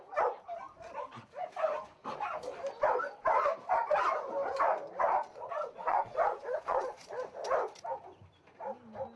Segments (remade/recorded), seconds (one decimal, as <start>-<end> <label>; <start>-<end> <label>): 0.0-5.3 recorded; 5.3-7.3 remade; 7.3-9.2 recorded